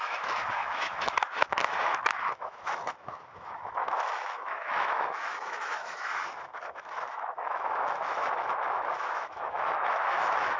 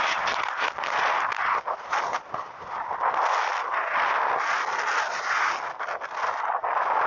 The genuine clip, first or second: second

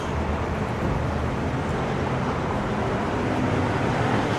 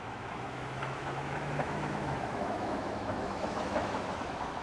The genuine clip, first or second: first